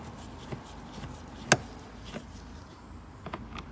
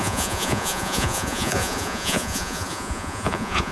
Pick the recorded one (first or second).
first